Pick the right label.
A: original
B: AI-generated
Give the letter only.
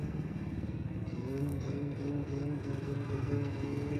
B